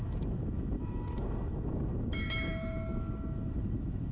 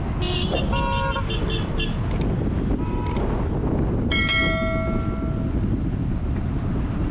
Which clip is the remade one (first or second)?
first